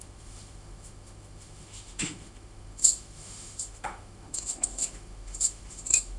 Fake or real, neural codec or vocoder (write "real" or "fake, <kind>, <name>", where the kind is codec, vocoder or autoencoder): fake, autoencoder, DAC-VAE